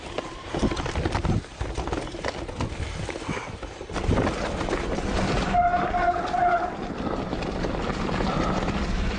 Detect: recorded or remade recorded